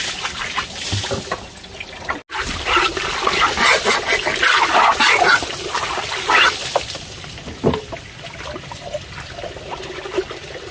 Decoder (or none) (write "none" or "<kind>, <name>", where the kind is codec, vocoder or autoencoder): none